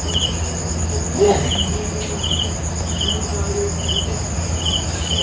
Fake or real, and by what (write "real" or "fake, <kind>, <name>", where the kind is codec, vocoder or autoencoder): real